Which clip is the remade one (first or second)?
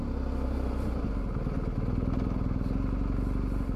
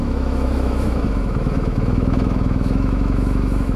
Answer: second